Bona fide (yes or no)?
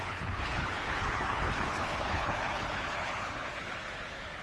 no